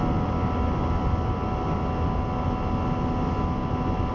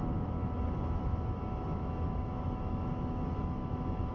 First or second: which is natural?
first